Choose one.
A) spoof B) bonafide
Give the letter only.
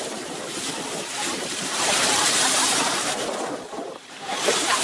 A